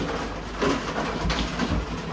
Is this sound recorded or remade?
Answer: recorded